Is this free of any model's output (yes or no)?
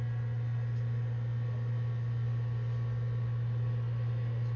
yes